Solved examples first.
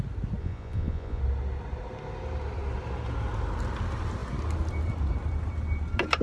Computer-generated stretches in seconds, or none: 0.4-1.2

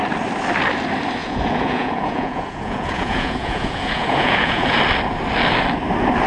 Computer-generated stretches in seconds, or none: 1.2-4.8

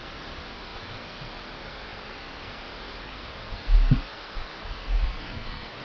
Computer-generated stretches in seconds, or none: 0.0-5.8

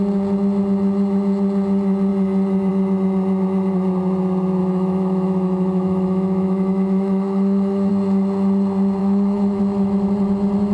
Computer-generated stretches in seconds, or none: 4.6-7.9; 9.0-9.6

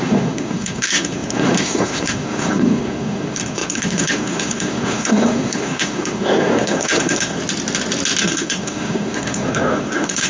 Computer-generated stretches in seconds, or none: 0.0-7.4; 8.2-10.3

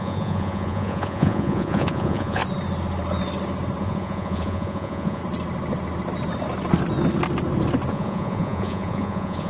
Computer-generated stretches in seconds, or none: 0.0-2.4; 3.8-5.2; 7.9-9.5

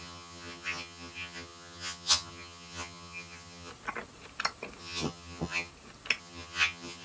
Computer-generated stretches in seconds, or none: 0.0-3.7; 4.8-5.7; 6.2-7.0

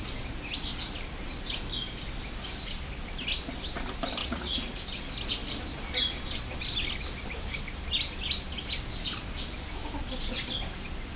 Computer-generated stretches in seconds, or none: 4.2-4.8